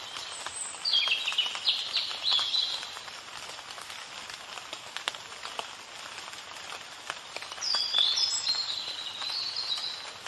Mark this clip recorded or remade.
recorded